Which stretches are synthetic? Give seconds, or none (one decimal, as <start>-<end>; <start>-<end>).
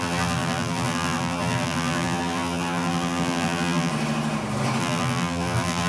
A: 0.0-3.9; 4.8-5.9